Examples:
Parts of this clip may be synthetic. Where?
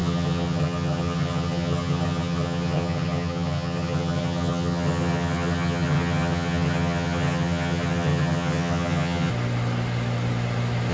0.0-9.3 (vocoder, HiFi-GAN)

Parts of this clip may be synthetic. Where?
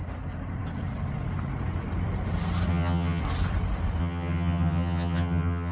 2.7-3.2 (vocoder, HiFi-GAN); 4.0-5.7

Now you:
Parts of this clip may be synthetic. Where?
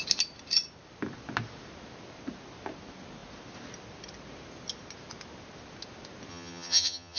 6.3-7.2 (vocoder, HiFi-GAN)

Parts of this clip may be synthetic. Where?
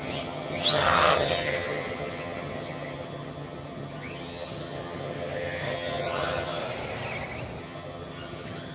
0.0-6.6 (vocoder, HiFi-GAN); 7.6-8.7